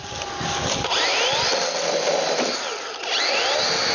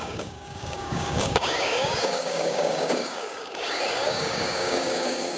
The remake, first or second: second